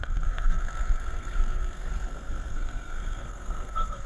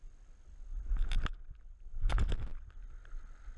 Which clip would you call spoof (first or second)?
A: first